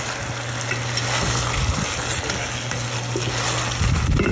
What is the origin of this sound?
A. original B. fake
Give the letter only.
A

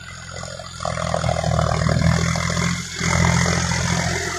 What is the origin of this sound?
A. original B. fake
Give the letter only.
A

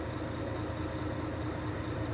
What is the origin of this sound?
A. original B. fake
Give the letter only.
A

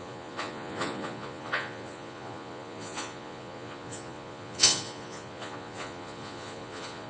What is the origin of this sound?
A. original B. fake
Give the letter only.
B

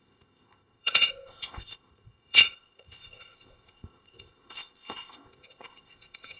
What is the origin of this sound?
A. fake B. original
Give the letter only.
A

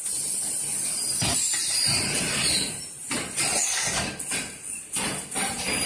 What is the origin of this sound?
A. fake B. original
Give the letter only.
B